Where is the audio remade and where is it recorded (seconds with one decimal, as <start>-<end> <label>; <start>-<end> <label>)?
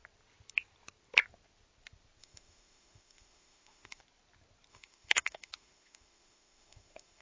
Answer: 0.0-2.2 recorded; 2.2-4.0 remade; 4.0-4.7 recorded; 4.7-7.2 remade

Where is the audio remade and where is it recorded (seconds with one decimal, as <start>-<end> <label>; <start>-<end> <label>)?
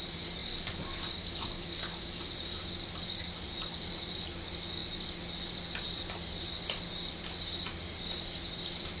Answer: 0.0-0.4 recorded; 0.4-4.1 remade; 4.1-9.0 recorded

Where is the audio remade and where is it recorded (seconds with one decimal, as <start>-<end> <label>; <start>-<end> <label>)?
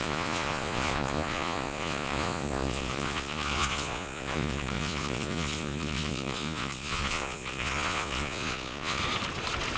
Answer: 0.0-9.0 remade; 9.0-9.8 recorded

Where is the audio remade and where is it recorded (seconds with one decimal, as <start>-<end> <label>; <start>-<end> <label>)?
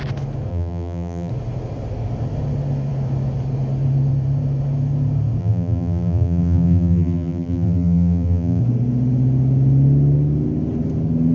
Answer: 0.0-0.5 recorded; 0.5-1.3 remade; 1.3-5.4 recorded; 5.4-8.6 remade; 8.6-11.3 recorded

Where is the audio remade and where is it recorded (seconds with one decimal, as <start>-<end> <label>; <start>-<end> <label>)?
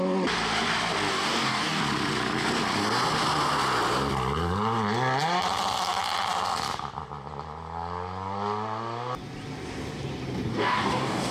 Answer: 0.0-1.1 recorded; 1.1-1.8 remade; 1.8-10.5 recorded; 10.5-11.3 remade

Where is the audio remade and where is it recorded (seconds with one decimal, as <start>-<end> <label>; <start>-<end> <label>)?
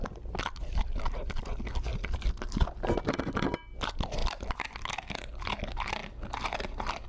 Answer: 0.0-7.1 recorded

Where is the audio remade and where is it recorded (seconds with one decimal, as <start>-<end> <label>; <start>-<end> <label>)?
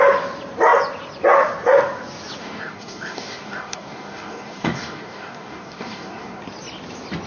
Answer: 0.0-2.4 recorded; 2.4-6.4 remade; 6.4-7.3 recorded